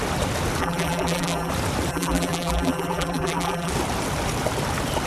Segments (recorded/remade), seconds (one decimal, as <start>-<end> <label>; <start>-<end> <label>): 0.0-0.6 recorded; 0.6-1.5 remade; 1.5-1.9 recorded; 1.9-3.7 remade; 3.7-5.1 recorded